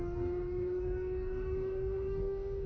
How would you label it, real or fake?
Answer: fake